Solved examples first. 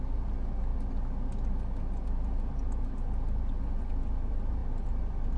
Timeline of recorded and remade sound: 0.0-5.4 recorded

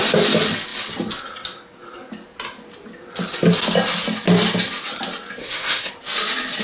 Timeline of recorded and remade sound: 0.0-5.4 recorded; 5.4-5.9 remade; 5.9-6.6 recorded